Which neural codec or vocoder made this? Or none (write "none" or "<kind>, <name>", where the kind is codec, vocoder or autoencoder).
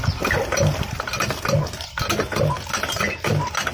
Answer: none